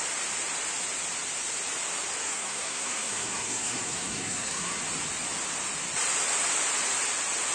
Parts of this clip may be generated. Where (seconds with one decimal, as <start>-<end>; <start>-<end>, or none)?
2.2-4.8